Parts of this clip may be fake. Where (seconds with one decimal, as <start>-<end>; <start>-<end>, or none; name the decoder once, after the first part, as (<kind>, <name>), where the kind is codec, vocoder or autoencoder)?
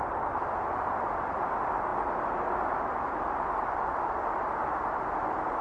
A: none